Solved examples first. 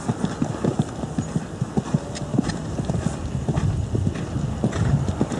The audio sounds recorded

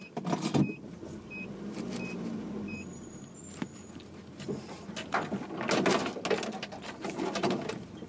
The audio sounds recorded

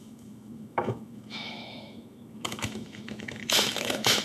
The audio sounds remade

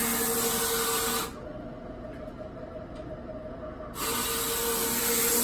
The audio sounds recorded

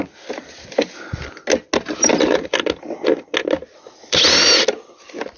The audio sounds recorded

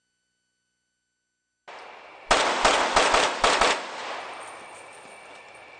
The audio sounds recorded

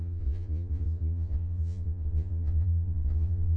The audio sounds remade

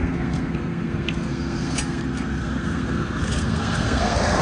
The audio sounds remade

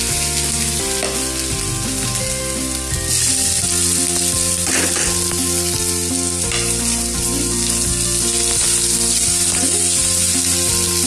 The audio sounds recorded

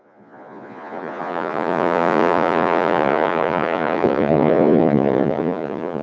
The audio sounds remade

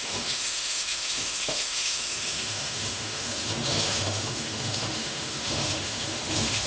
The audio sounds remade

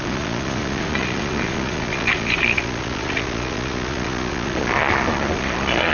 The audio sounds remade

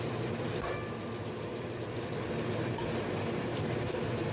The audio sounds recorded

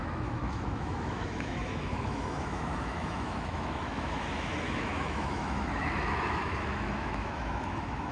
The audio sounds remade